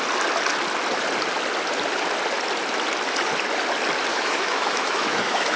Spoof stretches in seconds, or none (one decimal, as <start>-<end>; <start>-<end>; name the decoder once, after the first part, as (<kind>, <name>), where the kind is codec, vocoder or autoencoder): 4.1-5.6 (autoencoder, DAC-VAE)